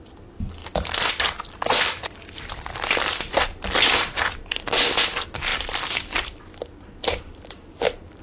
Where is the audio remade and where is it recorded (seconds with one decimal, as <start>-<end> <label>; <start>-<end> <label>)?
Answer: 0.0-0.6 recorded; 0.6-1.1 remade; 1.1-3.1 recorded; 3.1-4.7 remade; 4.7-5.5 recorded; 5.5-8.2 remade